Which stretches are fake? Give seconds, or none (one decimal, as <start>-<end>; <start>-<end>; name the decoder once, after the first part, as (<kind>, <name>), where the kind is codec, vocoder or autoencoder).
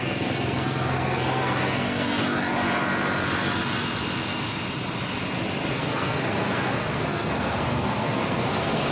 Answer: 0.0-2.2 (codec, SNAC); 5.7-8.9